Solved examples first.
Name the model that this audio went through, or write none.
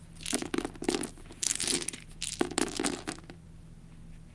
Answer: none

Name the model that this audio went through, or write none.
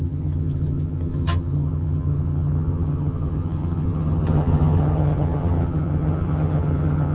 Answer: vocoder, HiFi-GAN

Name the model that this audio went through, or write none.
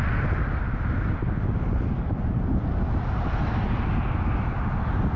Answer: none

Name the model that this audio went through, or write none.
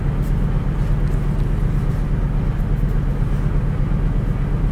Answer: none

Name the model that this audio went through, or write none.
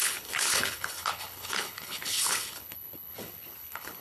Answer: codec, HILCodec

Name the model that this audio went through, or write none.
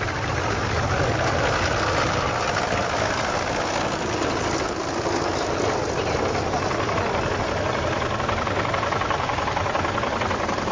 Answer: none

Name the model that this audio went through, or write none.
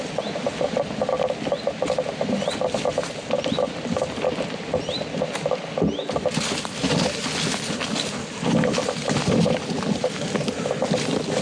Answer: none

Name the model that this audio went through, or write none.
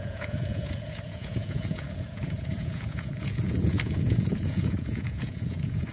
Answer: vocoder, Vocos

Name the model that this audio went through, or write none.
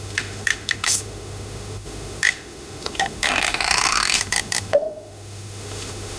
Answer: autoencoder, DAC-VAE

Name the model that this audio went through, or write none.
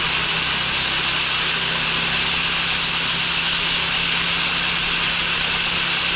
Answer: none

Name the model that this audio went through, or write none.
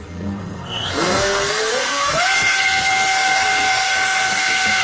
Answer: codec, SNAC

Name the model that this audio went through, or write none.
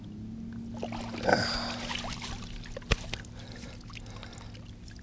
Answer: none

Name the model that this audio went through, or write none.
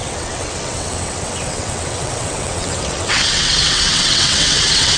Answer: vocoder, WaveNeXt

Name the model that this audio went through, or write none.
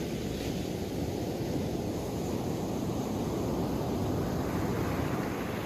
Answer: none